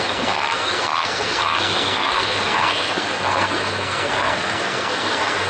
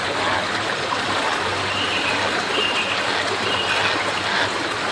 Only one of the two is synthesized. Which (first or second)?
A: first